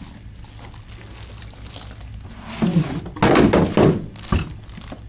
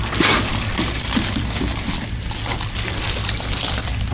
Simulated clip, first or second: second